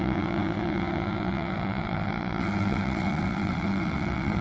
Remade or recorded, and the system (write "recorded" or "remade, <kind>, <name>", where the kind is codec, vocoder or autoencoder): remade, vocoder, WaveNeXt